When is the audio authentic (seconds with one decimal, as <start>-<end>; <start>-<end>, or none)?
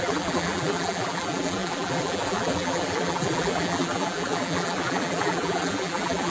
none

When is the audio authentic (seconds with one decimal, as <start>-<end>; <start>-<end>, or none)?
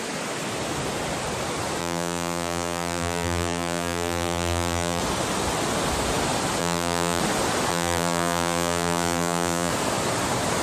0.0-1.8; 5.0-6.6; 7.2-7.7; 9.7-10.6